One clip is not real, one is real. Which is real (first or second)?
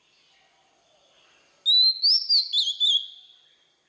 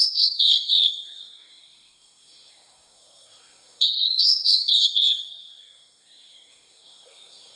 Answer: first